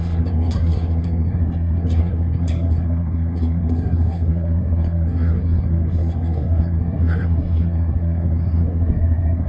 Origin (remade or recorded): remade